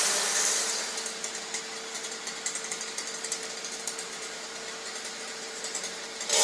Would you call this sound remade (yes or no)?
no